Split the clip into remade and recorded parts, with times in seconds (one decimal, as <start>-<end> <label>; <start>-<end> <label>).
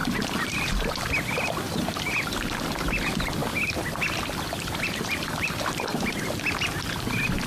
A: 0.0-3.4 remade; 3.4-4.5 recorded; 4.5-7.5 remade